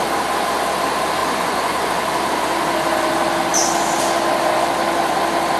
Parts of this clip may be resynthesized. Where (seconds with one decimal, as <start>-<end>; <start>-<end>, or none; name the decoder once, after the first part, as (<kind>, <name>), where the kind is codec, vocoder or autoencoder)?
1.2-1.9 (vocoder, Vocos)